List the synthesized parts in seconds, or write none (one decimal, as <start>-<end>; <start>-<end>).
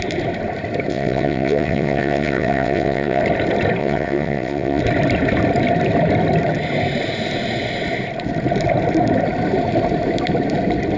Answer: 0.9-3.2; 3.8-4.8